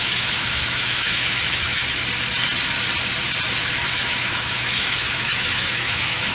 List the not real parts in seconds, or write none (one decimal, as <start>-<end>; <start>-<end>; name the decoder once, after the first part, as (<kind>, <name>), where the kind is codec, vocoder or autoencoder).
0.0-1.8 (autoencoder, DAC-VAE); 3.6-6.3

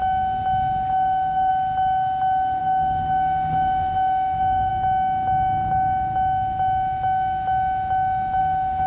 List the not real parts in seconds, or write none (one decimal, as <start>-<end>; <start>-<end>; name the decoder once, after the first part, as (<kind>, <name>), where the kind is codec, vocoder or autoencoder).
0.9-1.5 (autoencoder, DAC-VAE); 2.6-4.7; 8.4-8.9

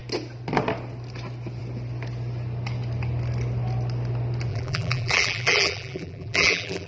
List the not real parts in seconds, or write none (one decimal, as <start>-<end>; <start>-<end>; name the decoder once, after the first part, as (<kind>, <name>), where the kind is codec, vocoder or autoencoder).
4.5-6.9 (vocoder, BigVGAN v2)

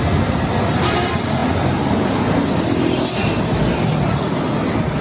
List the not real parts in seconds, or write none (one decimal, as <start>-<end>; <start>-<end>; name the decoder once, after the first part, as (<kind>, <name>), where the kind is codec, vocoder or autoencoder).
none

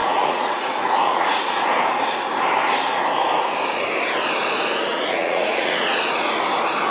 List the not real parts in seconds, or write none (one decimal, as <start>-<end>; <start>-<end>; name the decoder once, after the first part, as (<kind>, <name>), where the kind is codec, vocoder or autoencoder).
0.0-1.7 (vocoder, Vocos); 4.9-6.3

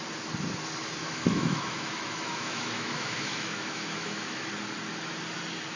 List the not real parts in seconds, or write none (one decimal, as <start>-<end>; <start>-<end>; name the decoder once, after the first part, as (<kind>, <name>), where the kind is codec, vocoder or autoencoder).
1.0-4.5 (autoencoder, DAC-VAE)

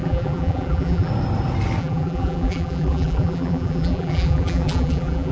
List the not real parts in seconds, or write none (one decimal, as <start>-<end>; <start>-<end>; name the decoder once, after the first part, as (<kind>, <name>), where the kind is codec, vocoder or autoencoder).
0.0-1.1 (vocoder, BigVGAN v2); 1.8-5.3